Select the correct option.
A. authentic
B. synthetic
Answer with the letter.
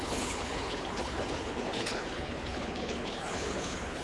B